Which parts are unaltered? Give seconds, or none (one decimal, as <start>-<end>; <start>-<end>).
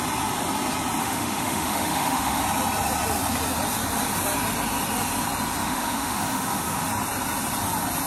0.0-1.0; 2.4-5.6; 6.9-8.1